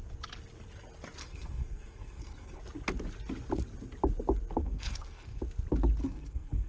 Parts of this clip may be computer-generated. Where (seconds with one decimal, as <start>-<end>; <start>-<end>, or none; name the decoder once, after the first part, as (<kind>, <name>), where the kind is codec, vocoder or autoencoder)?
1.2-2.6 (codec, SNAC); 4.6-5.4; 6.0-6.7